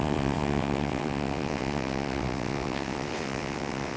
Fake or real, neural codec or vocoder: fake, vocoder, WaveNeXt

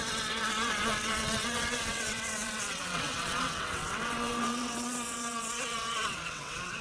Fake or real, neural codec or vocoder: fake, vocoder, WaveNeXt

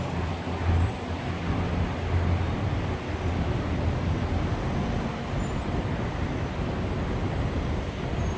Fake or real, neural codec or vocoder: real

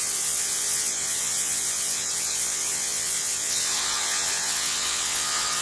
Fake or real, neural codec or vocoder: fake, vocoder, WaveNeXt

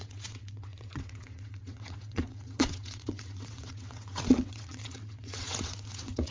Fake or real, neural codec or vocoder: fake, vocoder, WaveNeXt